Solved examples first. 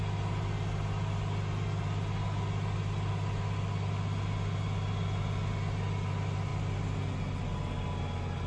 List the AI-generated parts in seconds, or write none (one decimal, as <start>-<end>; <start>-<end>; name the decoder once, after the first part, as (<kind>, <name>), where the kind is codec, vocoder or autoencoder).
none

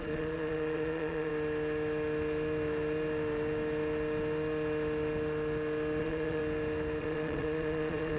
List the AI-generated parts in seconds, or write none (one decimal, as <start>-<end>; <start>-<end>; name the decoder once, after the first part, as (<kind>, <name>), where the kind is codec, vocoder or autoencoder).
0.0-1.3 (vocoder, Vocos); 6.0-6.4; 7.0-8.2

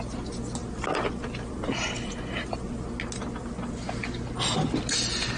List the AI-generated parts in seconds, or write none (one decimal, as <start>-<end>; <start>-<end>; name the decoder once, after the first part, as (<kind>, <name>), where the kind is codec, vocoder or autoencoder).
none

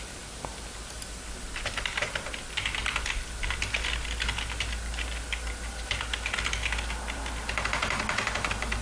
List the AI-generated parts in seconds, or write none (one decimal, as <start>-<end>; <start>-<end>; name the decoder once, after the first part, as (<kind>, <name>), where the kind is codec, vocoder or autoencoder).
none

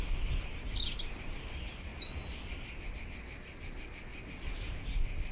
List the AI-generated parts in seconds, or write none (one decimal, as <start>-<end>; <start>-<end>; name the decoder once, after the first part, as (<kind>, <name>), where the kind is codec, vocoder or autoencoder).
none